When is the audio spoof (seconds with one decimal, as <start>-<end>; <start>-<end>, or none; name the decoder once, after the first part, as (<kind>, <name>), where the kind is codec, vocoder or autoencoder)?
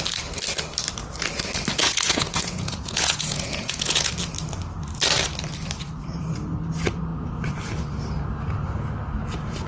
1.8-4.1 (vocoder, Vocos)